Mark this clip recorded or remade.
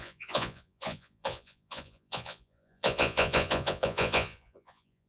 remade